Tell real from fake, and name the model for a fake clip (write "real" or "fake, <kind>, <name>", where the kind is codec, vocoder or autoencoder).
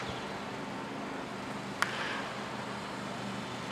real